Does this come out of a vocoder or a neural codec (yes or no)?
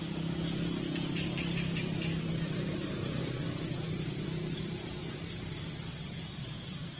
no